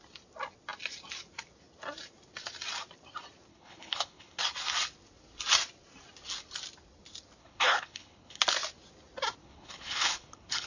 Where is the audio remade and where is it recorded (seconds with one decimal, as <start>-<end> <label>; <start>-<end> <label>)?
0.0-3.5 recorded; 3.5-4.4 remade; 4.4-7.4 recorded; 7.4-8.4 remade; 8.4-9.4 recorded; 9.4-10.7 remade

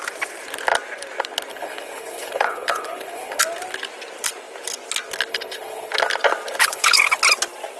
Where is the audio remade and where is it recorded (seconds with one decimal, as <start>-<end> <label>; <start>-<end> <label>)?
0.0-1.5 recorded; 1.5-3.4 remade; 3.4-5.3 recorded; 5.3-5.9 remade; 5.9-6.6 recorded; 6.6-7.2 remade; 7.2-7.8 recorded

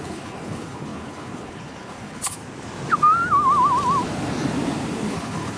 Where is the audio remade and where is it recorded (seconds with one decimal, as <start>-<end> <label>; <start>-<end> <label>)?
0.0-2.4 remade; 2.4-5.1 recorded; 5.1-5.6 remade

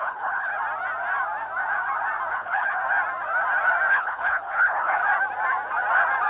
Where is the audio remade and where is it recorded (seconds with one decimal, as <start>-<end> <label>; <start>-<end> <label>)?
0.0-0.5 remade; 0.5-2.3 recorded; 2.3-2.8 remade; 2.8-3.9 recorded; 3.9-5.0 remade; 5.0-6.3 recorded

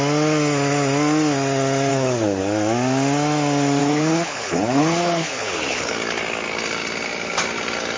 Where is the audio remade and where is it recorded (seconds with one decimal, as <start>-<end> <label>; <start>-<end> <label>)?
0.0-1.9 recorded; 1.9-2.4 remade; 2.4-3.8 recorded; 3.8-5.9 remade; 5.9-8.0 recorded